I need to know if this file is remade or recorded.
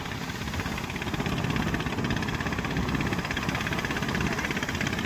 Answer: recorded